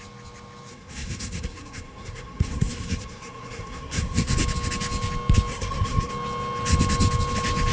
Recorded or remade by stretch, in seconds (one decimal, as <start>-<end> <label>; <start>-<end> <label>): 0.0-0.7 recorded; 0.7-4.3 remade; 4.3-5.5 recorded; 5.5-6.1 remade; 6.1-7.7 recorded